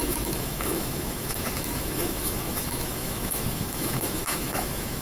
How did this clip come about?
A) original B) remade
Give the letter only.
B